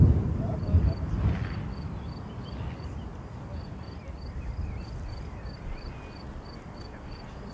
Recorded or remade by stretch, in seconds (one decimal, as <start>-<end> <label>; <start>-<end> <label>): 0.0-3.1 recorded; 3.1-4.3 remade; 4.3-7.5 recorded